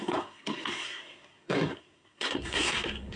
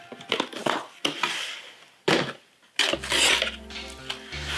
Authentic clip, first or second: second